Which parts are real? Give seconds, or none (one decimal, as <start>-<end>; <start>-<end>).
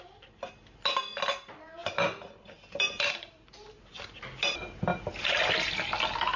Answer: 0.0-6.4